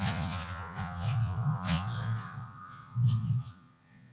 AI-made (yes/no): yes